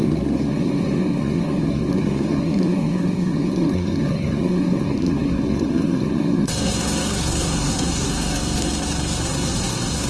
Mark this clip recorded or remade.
remade